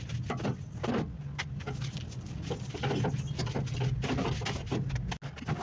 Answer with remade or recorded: recorded